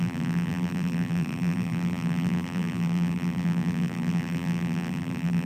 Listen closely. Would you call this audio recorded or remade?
remade